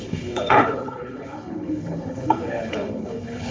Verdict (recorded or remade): remade